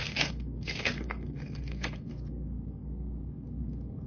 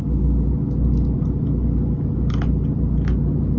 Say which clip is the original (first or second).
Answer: second